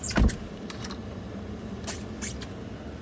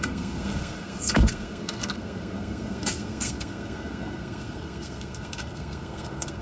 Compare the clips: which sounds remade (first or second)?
second